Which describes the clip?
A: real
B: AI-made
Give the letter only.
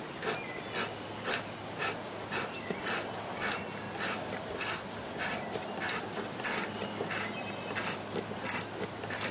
A